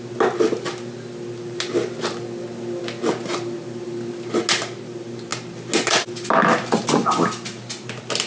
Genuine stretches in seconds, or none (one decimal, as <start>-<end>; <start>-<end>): 0.0-8.3